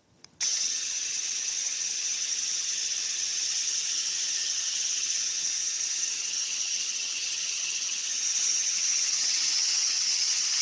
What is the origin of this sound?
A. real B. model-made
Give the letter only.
B